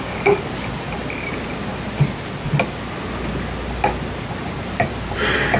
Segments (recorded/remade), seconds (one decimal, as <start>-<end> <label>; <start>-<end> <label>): 0.0-1.0 remade; 1.0-4.4 recorded; 4.4-5.6 remade